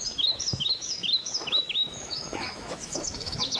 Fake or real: fake